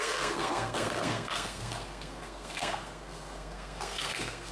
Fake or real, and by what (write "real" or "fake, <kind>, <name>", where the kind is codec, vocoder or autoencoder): fake, codec, SNAC